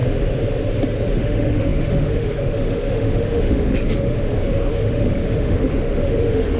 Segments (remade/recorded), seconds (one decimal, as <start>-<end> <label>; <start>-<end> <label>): 0.0-1.1 recorded; 1.1-6.6 remade